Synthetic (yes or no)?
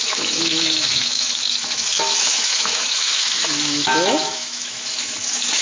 yes